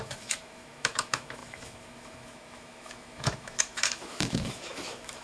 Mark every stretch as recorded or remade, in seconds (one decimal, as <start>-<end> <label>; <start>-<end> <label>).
0.0-5.2 remade